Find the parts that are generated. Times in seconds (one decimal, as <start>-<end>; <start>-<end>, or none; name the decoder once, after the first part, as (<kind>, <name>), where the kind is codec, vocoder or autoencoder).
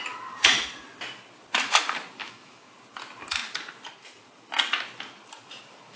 2.2-2.7 (autoencoder, DAC-VAE)